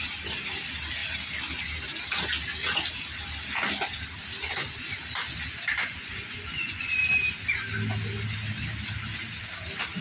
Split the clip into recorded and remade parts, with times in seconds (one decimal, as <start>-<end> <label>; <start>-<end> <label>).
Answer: 0.0-5.8 recorded; 5.8-6.9 remade; 6.9-10.0 recorded